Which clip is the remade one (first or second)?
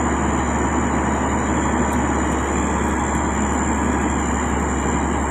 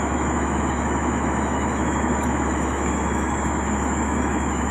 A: second